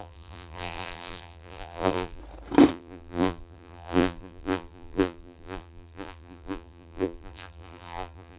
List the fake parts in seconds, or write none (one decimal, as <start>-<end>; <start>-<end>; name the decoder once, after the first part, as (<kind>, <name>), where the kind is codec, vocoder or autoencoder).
0.0-2.2 (vocoder, BigVGAN v2); 2.7-8.4